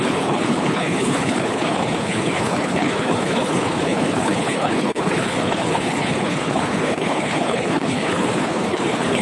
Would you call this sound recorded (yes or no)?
no